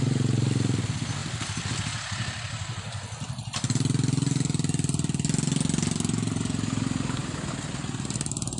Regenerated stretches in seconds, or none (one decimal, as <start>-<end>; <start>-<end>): none